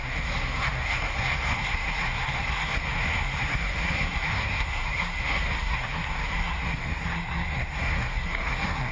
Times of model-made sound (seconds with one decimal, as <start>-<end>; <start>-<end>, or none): 0.0-8.9